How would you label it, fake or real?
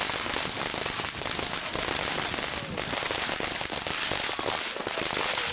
real